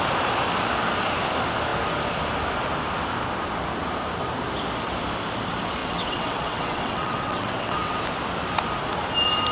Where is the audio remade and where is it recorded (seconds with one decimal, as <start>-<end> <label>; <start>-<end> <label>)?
0.0-5.8 recorded; 5.8-8.0 remade; 8.0-9.5 recorded

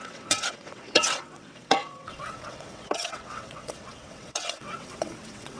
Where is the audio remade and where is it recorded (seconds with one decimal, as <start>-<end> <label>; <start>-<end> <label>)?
0.0-5.6 remade

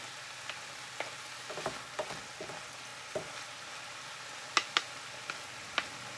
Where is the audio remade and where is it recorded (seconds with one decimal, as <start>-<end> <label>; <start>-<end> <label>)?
0.0-6.2 recorded

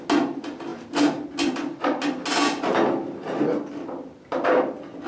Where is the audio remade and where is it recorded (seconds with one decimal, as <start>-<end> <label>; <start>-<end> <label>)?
0.0-5.1 recorded

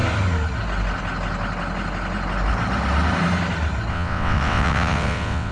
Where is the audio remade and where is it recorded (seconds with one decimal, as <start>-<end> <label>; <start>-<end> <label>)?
0.0-3.9 recorded; 3.9-5.5 remade